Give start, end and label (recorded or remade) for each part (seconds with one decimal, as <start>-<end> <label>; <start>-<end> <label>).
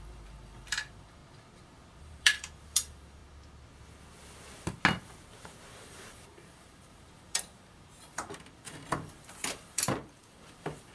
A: 0.0-1.2 remade; 1.2-2.0 recorded; 2.0-3.2 remade; 3.2-5.7 recorded; 5.7-10.9 remade